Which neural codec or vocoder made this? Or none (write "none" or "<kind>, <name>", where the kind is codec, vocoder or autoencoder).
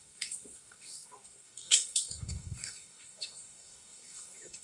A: codec, DAC